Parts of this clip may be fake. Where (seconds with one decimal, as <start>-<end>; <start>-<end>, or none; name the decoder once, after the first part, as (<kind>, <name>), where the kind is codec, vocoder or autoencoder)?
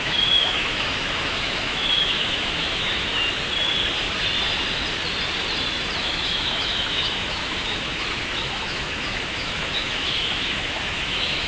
0.0-3.1 (autoencoder, DAC-VAE); 6.0-11.5